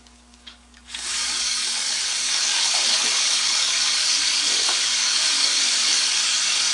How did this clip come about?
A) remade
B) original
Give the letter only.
A